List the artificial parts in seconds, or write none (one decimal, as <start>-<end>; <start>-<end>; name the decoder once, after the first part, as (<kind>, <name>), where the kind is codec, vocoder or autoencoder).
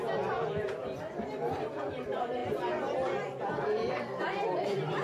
none